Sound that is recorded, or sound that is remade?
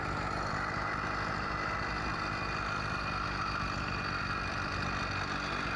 recorded